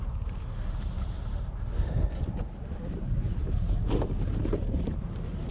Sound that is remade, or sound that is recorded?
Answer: remade